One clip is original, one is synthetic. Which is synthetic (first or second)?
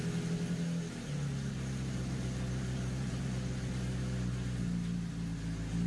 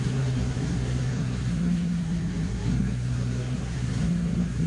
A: second